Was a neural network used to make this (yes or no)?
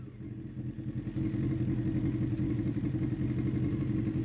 no